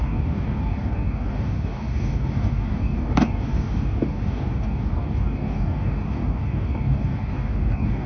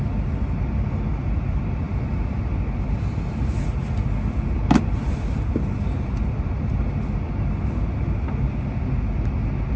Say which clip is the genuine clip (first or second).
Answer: second